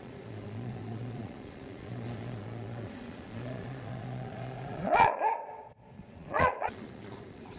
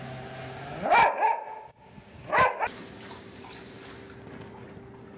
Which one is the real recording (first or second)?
second